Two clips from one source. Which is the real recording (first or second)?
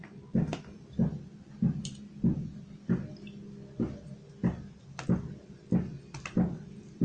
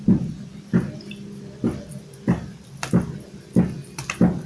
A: first